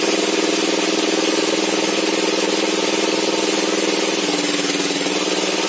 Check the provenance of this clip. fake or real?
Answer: real